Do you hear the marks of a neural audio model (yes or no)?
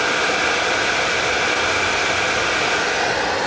no